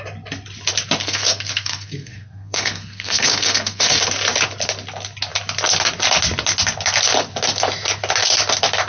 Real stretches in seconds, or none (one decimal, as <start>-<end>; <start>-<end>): 0.0-1.0; 4.0-8.9